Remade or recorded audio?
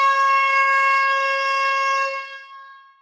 remade